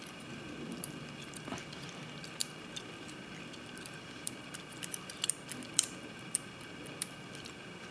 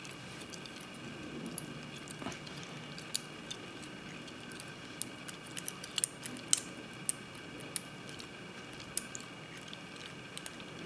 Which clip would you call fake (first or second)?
first